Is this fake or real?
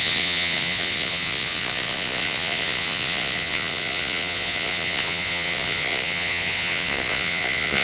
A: fake